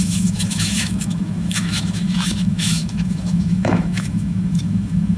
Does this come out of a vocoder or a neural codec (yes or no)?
yes